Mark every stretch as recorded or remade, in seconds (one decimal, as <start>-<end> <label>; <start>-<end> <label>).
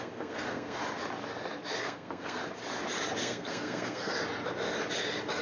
0.0-0.8 remade; 0.8-1.8 recorded; 1.8-2.4 remade; 2.4-3.2 recorded; 3.2-4.1 remade; 4.1-5.4 recorded